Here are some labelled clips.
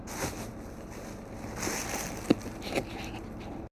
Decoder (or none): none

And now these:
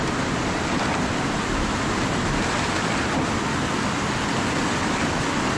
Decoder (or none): none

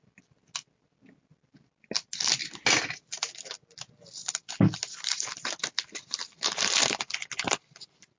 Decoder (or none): none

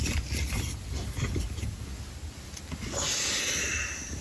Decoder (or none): none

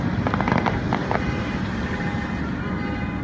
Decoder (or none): none